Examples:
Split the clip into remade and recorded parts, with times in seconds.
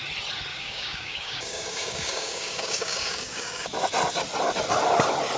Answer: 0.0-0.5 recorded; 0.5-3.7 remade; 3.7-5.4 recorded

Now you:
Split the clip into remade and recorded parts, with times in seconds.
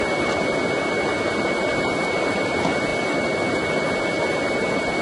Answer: 0.0-5.0 recorded